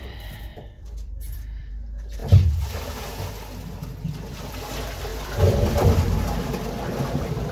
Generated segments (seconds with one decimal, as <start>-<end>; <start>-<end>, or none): 0.5-1.7; 5.1-6.7